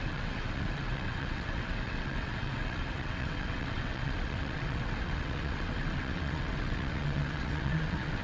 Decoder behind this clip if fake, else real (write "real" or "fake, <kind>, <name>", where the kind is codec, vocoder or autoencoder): fake, vocoder, WaveNeXt